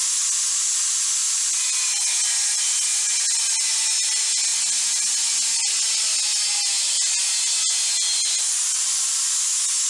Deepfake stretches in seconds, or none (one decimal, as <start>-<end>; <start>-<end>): none